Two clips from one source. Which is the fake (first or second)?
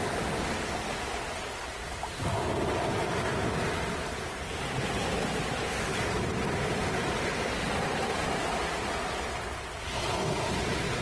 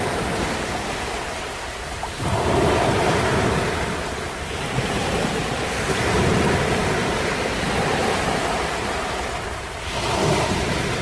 second